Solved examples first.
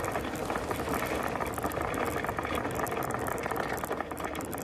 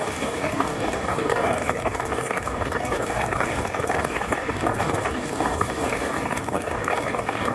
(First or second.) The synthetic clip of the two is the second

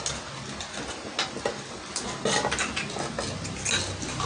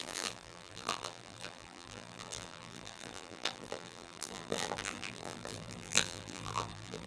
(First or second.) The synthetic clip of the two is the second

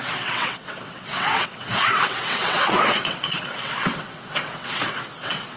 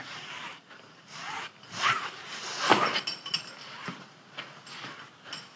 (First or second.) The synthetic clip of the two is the first